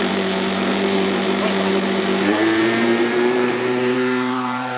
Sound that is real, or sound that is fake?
fake